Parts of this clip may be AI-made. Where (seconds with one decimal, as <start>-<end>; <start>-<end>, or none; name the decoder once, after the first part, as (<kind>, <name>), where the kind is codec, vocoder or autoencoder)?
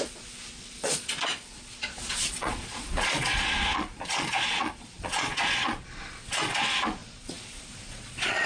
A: 0.0-8.5 (vocoder, Vocos)